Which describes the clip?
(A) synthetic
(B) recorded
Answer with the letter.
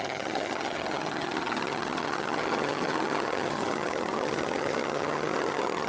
A